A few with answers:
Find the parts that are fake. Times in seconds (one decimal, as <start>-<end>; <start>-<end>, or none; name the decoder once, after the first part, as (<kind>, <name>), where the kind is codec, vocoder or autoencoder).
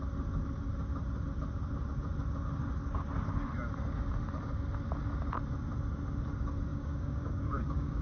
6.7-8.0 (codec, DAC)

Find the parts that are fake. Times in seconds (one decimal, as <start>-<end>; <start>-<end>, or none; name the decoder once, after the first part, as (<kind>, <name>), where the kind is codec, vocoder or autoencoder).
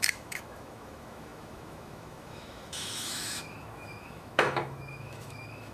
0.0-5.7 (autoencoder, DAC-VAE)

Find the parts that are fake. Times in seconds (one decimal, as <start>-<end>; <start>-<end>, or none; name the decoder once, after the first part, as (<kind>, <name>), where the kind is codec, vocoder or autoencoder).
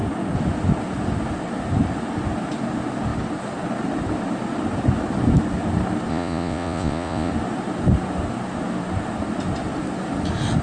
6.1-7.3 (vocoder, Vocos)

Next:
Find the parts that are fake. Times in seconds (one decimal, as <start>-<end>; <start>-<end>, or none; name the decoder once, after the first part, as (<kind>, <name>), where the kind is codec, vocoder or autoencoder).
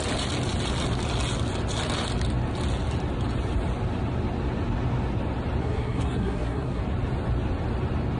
5.6-6.8 (codec, SNAC)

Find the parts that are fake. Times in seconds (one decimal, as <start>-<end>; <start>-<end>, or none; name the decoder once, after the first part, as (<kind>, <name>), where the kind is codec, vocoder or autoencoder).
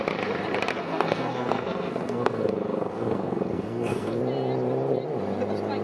0.7-4.2 (codec, SNAC)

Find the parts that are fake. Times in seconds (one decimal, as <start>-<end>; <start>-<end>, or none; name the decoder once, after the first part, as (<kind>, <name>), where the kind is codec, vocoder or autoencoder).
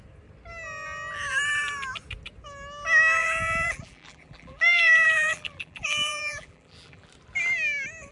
3.2-7.1 (vocoder, BigVGAN v2)